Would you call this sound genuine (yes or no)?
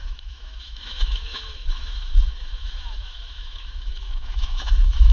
no